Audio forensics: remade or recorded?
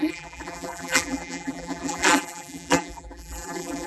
remade